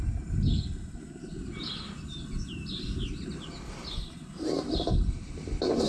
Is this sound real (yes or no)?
yes